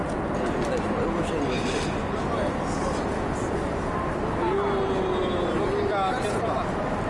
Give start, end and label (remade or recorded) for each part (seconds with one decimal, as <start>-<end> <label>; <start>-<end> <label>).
0.0-7.1 recorded